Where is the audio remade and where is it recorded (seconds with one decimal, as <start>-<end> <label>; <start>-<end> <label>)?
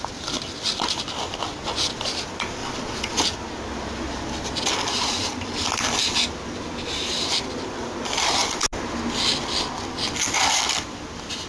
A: 0.0-2.6 recorded; 2.6-3.2 remade; 3.2-11.5 recorded